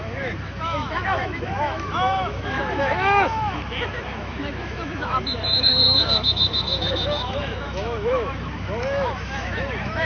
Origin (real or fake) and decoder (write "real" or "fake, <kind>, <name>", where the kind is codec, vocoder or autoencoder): fake, autoencoder, DAC-VAE